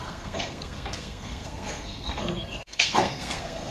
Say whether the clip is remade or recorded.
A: remade